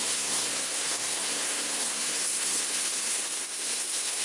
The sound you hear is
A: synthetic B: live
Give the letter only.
A